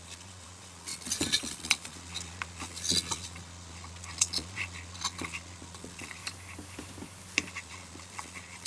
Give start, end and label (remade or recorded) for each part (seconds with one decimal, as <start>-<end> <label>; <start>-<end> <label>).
0.0-6.2 remade; 6.2-7.5 recorded; 7.5-8.7 remade